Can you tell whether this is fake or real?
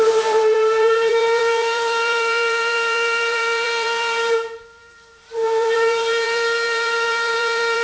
fake